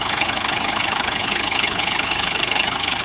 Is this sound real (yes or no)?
no